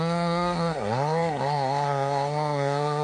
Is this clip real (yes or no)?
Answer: no